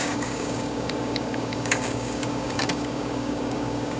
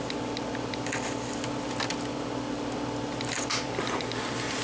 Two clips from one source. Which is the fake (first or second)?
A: first